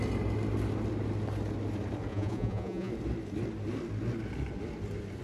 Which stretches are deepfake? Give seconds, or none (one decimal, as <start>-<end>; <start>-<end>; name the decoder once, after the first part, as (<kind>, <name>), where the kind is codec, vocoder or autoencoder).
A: 2.1-2.9 (vocoder, Vocos)